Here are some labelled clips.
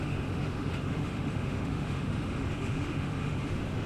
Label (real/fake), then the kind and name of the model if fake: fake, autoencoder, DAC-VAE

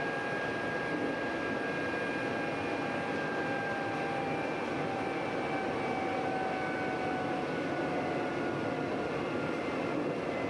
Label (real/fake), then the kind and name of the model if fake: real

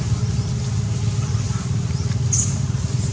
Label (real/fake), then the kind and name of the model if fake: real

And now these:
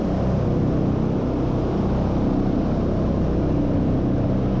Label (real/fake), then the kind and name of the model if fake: real